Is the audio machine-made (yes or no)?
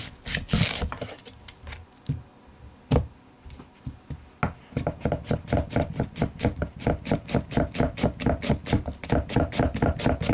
no